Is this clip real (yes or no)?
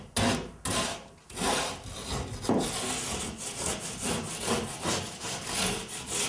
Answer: yes